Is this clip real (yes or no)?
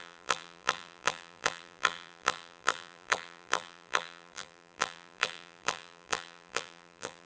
no